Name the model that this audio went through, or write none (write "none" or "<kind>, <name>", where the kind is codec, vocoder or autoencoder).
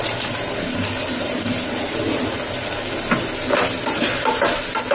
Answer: none